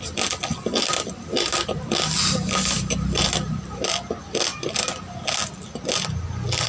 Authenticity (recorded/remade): recorded